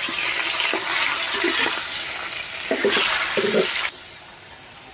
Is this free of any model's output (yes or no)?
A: yes